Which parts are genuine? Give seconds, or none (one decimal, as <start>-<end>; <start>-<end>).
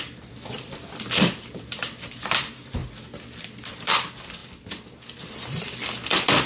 2.8-3.7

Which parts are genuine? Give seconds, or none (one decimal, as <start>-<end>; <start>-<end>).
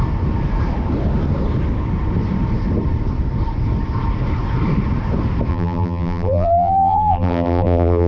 0.0-5.5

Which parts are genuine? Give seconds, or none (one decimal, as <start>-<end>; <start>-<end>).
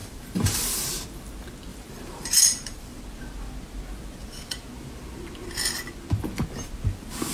0.8-1.7; 3.0-7.3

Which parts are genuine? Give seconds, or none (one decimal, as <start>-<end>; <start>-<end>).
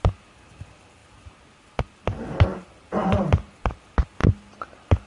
0.0-2.5; 3.8-5.1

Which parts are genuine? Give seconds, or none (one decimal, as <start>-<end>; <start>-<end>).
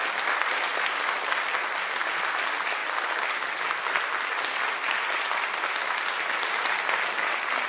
0.0-7.7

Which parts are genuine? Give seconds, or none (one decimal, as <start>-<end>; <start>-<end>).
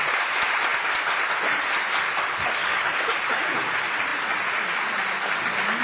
0.0-5.8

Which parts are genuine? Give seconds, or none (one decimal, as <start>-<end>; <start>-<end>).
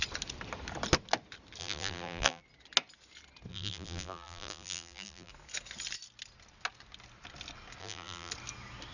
0.0-1.6; 2.4-3.5; 5.3-7.8; 8.3-8.9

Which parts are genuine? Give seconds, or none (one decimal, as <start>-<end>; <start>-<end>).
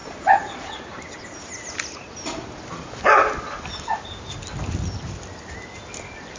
1.5-6.4